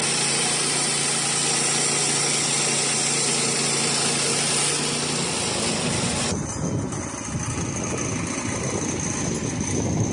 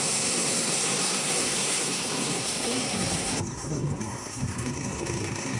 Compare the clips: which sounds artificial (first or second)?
second